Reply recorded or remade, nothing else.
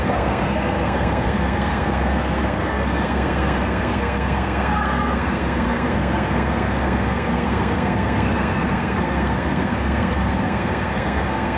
remade